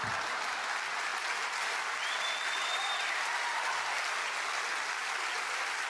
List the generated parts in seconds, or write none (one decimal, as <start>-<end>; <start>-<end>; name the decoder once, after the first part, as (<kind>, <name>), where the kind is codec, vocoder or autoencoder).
none

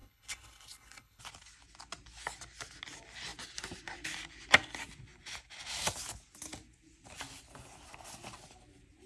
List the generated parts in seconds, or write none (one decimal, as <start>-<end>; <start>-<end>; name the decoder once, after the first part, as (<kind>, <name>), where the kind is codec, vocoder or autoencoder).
0.0-1.2 (codec, HILCodec)

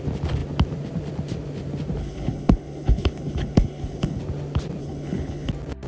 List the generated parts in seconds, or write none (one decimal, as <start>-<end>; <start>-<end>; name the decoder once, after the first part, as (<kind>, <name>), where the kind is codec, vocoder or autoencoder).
2.0-4.2 (codec, HILCodec); 4.8-5.5

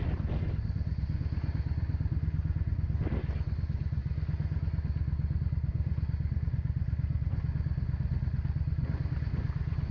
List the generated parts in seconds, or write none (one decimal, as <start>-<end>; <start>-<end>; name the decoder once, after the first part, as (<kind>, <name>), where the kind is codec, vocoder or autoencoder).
none

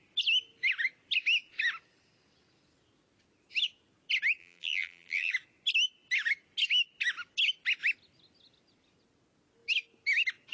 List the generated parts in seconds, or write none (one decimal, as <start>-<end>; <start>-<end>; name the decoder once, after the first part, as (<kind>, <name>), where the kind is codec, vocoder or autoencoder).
4.4-5.3 (vocoder, BigVGAN v2)

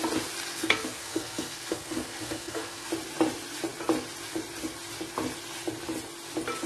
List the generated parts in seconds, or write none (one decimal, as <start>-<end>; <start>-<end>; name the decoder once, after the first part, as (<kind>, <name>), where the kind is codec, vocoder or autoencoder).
0.5-2.9 (codec, SNAC)

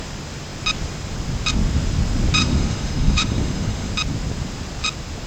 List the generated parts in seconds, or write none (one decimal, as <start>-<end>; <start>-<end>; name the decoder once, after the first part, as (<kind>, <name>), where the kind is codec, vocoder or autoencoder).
2.4-3.9 (autoencoder, DAC-VAE)

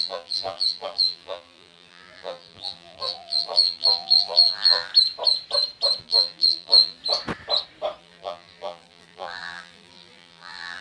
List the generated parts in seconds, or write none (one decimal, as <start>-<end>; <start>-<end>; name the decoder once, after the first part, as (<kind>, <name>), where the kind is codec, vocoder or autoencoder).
0.0-4.9 (vocoder, BigVGAN v2); 6.0-7.0; 8.0-10.8